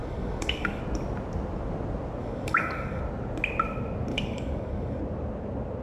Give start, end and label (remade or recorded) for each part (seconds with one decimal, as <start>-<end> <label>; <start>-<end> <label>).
0.0-0.8 remade; 0.8-2.2 recorded; 2.2-3.0 remade; 3.0-4.1 recorded; 4.1-5.0 remade; 5.0-5.8 recorded